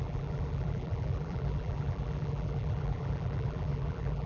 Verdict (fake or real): fake